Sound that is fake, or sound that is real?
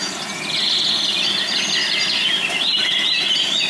real